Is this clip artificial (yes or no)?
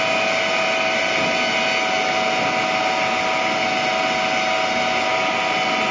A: no